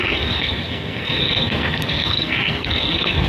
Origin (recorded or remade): remade